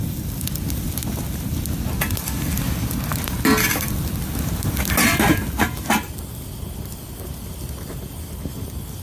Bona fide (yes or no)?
yes